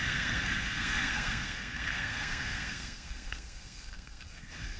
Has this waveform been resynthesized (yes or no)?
yes